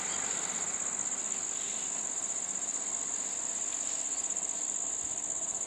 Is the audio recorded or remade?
recorded